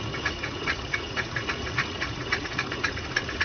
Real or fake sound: fake